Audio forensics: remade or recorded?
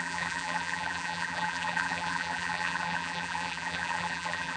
remade